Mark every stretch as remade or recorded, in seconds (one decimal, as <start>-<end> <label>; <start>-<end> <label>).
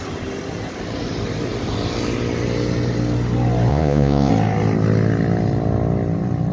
0.0-3.7 recorded; 3.7-4.3 remade; 4.3-6.5 recorded